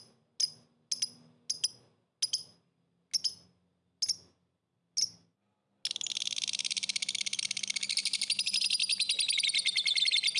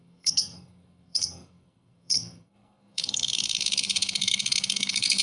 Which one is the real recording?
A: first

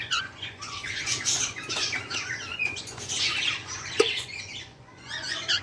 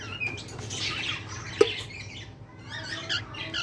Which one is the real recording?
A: second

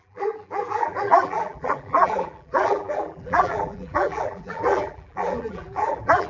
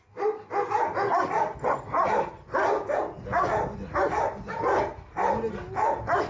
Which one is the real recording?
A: second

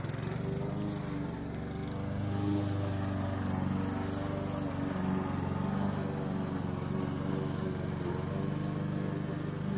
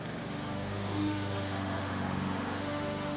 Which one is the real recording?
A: first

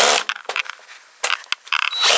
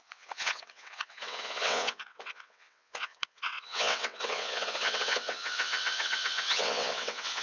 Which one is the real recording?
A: first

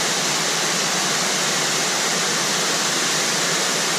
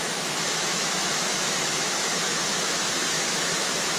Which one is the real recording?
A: first